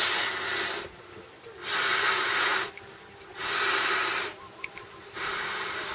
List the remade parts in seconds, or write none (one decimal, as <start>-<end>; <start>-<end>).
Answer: 2.1-5.9